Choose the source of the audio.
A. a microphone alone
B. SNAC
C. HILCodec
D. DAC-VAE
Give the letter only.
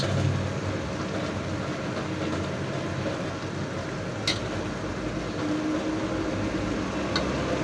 A